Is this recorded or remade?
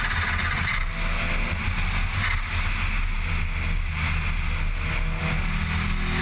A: recorded